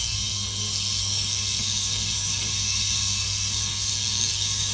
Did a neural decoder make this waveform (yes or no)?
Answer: yes